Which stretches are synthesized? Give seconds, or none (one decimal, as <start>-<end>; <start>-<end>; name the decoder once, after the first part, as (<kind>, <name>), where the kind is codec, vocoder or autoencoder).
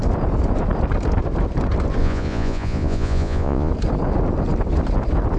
2.0-3.7 (vocoder, Vocos)